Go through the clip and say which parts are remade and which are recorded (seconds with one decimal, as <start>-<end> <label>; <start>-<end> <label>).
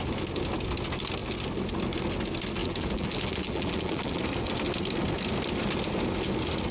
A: 0.0-2.6 recorded; 2.6-4.2 remade; 4.2-6.7 recorded